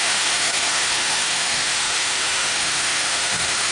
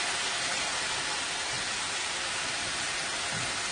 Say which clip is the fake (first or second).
first